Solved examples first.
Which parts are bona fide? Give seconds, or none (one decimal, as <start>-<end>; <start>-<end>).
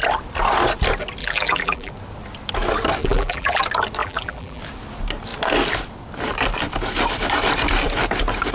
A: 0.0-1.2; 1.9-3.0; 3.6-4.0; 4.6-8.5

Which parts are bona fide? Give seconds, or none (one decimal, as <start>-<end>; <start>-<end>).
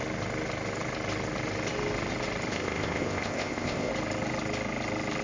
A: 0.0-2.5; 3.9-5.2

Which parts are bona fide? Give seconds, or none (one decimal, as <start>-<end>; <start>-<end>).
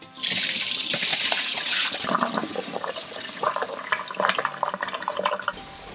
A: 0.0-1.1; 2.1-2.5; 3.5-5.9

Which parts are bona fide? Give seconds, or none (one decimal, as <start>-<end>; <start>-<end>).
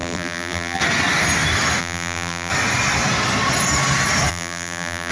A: 0.8-1.8; 2.5-4.3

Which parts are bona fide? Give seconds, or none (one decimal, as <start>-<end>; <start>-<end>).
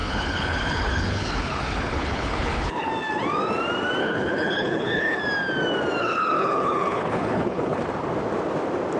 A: 2.9-4.0; 5.2-6.0; 7.8-9.0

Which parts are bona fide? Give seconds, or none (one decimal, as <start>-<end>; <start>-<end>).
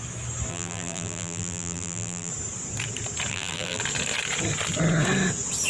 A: 0.0-0.5; 2.3-3.3; 3.8-5.7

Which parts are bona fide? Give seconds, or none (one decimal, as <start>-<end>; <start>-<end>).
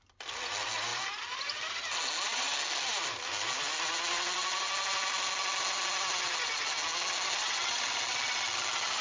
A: 0.0-9.0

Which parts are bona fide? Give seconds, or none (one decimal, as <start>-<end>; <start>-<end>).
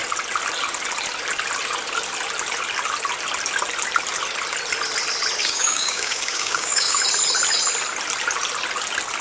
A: 0.0-5.4; 7.0-9.2